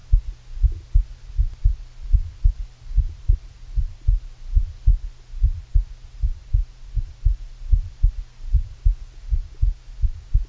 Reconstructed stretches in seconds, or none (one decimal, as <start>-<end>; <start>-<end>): none